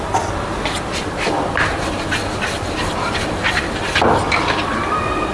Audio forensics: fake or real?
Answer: real